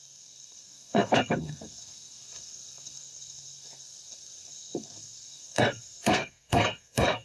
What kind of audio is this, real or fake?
fake